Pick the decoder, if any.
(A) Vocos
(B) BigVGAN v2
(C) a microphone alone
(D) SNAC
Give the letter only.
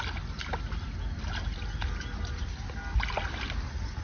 C